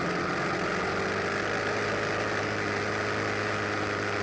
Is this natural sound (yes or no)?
yes